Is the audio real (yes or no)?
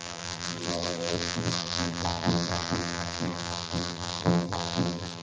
no